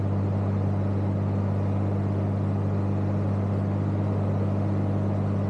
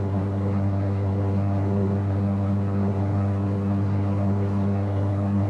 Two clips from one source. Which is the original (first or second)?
first